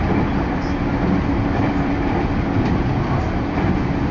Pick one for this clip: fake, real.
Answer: real